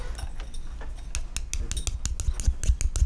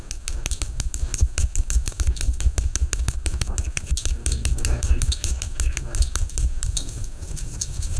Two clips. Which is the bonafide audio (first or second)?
first